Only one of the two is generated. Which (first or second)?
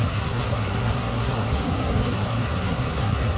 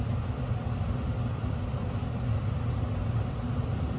first